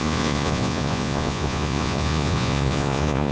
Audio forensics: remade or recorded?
remade